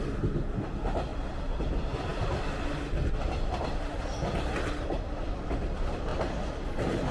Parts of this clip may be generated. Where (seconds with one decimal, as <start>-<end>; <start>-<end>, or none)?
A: 1.1-1.6

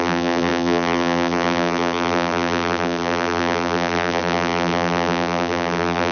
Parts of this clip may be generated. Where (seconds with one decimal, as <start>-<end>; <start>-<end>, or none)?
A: 0.0-6.1

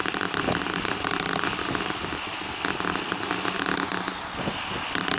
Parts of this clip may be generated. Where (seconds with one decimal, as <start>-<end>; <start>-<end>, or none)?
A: none

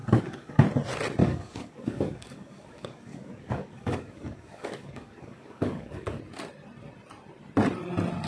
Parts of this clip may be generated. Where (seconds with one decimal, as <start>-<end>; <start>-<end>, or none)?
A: 0.0-0.6; 1.2-6.2